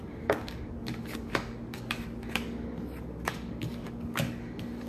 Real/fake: fake